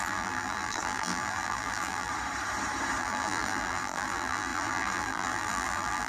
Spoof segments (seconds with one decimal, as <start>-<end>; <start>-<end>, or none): 0.0-2.1; 3.0-6.1